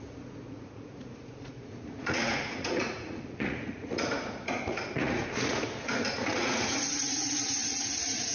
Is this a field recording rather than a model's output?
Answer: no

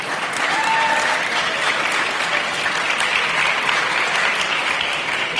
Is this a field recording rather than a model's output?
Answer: no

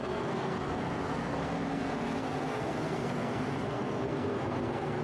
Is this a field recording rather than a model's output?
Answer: no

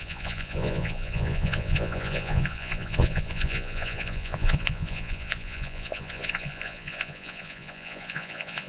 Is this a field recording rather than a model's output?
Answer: no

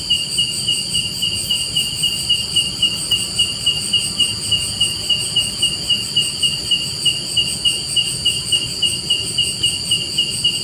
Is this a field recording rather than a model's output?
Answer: yes